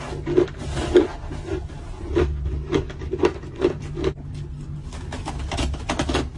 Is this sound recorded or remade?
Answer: recorded